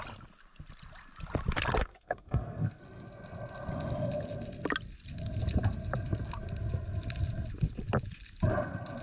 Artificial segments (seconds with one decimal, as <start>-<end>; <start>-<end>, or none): 1.8-2.8